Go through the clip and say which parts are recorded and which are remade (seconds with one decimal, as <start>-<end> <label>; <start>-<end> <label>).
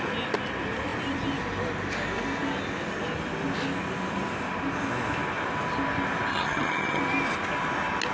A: 0.0-6.3 recorded; 6.3-7.0 remade; 7.0-8.1 recorded